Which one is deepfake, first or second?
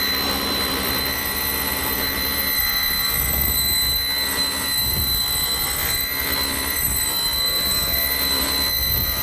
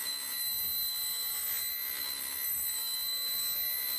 first